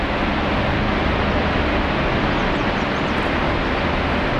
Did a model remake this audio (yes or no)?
no